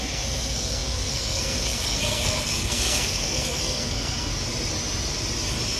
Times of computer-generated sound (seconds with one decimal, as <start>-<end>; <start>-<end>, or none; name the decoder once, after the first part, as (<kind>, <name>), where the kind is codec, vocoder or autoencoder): 0.0-4.3 (codec, SNAC)